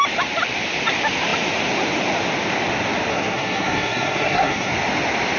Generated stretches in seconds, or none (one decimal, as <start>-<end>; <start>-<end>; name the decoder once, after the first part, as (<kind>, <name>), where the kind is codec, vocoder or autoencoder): 3.1-4.7 (codec, SNAC)